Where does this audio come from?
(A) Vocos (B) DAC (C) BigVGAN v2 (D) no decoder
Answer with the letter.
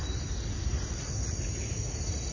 D